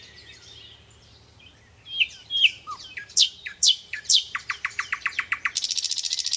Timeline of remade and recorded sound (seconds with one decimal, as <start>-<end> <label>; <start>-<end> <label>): 0.0-2.2 recorded; 2.2-5.5 remade; 5.5-6.4 recorded